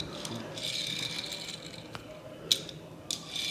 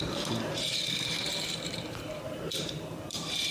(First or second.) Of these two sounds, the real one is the first